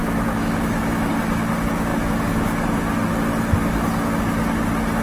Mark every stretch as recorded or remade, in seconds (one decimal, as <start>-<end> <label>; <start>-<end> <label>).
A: 0.0-1.1 remade; 1.1-5.0 recorded